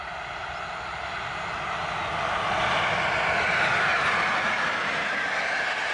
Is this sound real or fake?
real